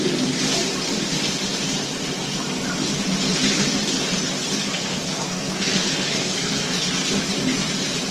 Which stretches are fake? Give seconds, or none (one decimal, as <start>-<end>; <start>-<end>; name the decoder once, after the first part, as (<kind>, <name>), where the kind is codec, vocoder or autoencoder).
4.7-6.7 (codec, SNAC)